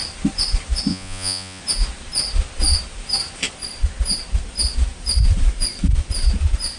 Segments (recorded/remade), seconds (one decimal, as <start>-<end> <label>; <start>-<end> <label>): 0.0-0.9 recorded; 0.9-1.6 remade; 1.6-6.8 recorded